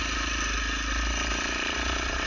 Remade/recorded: recorded